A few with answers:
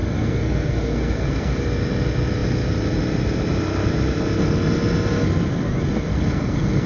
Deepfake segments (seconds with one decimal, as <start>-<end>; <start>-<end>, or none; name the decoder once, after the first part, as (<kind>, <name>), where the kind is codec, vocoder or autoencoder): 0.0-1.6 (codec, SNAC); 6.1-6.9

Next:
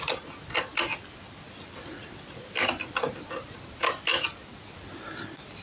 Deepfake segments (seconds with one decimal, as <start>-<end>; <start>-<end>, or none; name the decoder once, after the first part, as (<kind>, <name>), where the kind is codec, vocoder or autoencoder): none

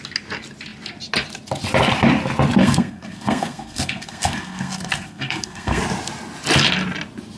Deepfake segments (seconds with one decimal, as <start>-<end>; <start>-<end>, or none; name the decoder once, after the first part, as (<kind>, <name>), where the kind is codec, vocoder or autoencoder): 2.6-5.8 (codec, SNAC)